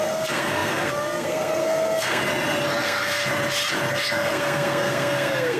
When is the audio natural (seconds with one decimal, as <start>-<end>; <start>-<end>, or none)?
2.2-2.8; 3.3-3.9